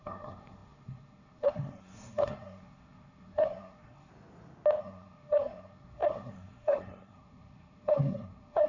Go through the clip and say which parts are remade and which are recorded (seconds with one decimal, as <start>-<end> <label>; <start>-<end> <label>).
0.0-4.1 remade; 4.1-4.8 recorded; 4.8-8.7 remade